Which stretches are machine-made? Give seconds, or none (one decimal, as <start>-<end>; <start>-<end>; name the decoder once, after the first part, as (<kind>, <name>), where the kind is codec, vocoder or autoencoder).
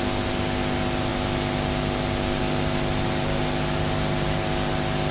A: none